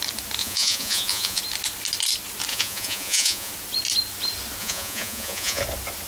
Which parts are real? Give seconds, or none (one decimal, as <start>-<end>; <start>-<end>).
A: 0.0-0.4; 1.4-2.5; 3.5-4.6; 5.6-6.1